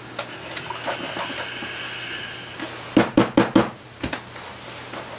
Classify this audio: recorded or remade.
recorded